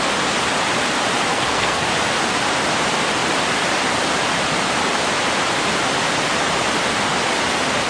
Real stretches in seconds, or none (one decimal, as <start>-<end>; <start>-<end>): 0.0-1.3; 1.9-7.9